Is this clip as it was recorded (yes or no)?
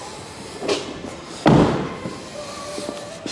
yes